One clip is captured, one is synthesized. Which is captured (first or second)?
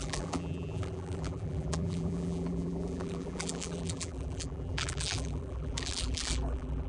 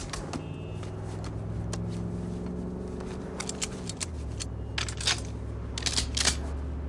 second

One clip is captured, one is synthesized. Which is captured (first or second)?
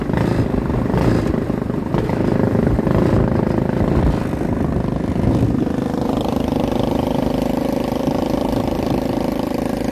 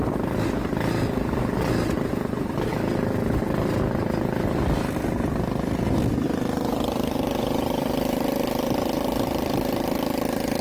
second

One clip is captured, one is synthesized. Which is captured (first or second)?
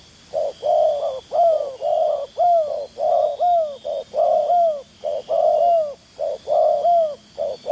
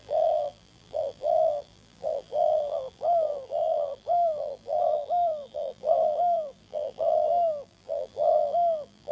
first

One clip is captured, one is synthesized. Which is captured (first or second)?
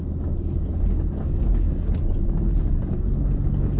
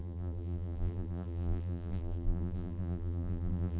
first